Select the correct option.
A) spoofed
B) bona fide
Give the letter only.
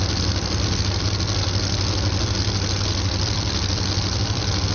B